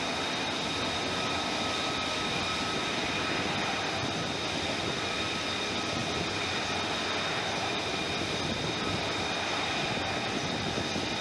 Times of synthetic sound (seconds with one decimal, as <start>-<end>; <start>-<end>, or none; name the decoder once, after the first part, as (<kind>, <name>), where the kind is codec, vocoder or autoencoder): none